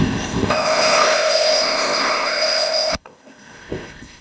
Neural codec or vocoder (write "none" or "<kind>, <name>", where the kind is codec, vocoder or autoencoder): codec, ZipCodec